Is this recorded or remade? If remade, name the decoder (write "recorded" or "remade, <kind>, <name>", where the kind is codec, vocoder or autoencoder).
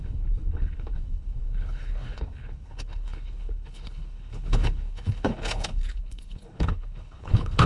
remade, codec, HILCodec